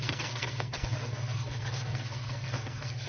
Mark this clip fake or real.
fake